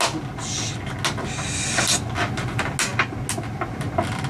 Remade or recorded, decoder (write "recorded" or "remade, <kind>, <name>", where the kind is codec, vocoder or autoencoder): recorded